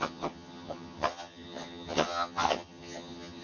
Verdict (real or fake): fake